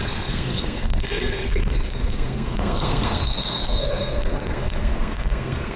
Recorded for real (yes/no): no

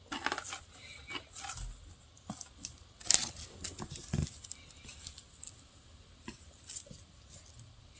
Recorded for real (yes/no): yes